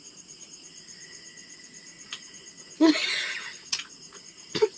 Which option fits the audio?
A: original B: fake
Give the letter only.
B